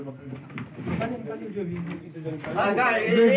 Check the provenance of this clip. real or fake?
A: real